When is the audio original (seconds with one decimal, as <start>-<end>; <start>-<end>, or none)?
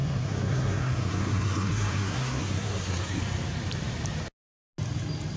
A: 3.2-5.4